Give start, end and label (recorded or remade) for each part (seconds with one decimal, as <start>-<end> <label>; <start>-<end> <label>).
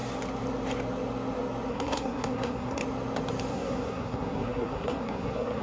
0.0-1.7 recorded; 1.7-2.8 remade; 2.8-3.5 recorded; 3.5-5.6 remade